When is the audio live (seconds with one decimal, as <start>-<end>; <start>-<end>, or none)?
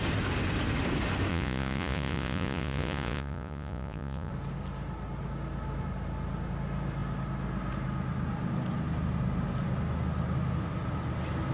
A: 0.0-1.3; 4.3-11.5